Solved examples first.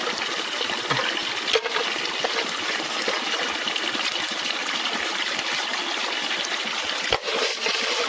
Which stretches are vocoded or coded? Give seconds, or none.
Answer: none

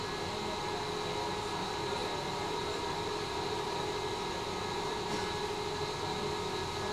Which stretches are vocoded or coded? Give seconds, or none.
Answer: 2.0-5.1 (vocoder, BigVGAN v2)

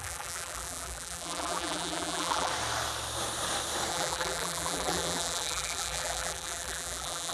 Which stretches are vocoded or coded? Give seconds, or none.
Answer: 0.0-2.5 (vocoder, BigVGAN v2); 3.9-7.3

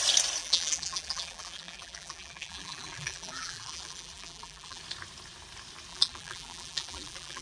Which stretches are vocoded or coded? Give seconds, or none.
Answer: 0.4-4.8 (vocoder, BigVGAN v2); 5.9-7.4

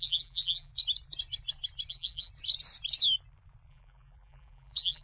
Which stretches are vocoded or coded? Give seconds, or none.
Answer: 0.0-0.7 (vocoder, BigVGAN v2); 1.9-2.3; 3.7-5.0

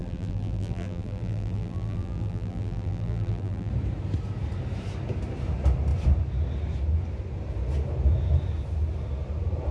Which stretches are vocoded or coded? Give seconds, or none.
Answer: 0.0-3.7 (vocoder, BigVGAN v2)

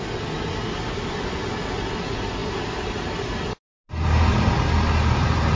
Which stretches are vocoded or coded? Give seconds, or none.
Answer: none